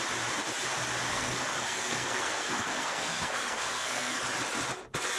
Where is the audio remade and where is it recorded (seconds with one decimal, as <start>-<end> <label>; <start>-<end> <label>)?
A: 0.0-1.1 recorded; 1.1-4.2 remade; 4.2-5.2 recorded